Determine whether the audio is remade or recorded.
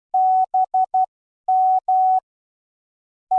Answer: recorded